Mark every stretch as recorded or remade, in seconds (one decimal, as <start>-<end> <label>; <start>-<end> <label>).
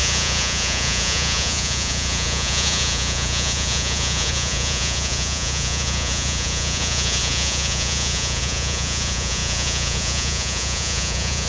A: 0.0-11.5 remade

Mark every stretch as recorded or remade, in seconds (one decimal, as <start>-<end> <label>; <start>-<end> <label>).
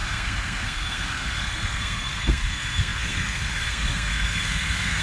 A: 0.0-5.0 remade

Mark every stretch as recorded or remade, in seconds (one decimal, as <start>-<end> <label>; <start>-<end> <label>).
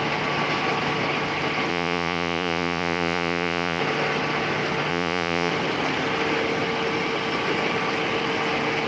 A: 0.0-1.7 recorded; 1.7-3.8 remade; 3.8-4.9 recorded; 4.9-5.5 remade; 5.5-8.9 recorded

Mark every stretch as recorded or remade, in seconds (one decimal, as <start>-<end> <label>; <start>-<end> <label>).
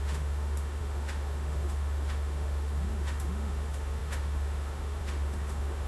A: 0.0-5.9 remade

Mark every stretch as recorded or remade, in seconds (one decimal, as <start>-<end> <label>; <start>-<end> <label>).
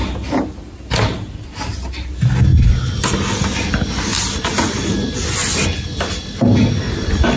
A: 0.0-7.4 recorded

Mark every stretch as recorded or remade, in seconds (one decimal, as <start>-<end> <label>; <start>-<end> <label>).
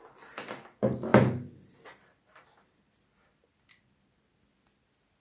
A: 0.0-5.2 recorded